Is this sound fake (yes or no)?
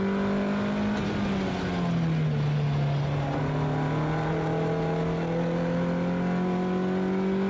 no